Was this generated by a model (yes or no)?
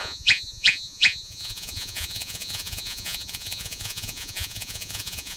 yes